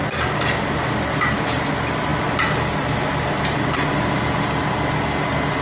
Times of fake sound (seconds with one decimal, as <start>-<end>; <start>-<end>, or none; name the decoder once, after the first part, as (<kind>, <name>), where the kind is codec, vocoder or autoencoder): none